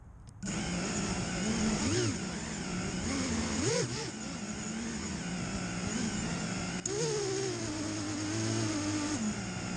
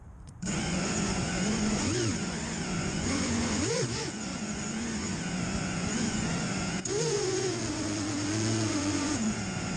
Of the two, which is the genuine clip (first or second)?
first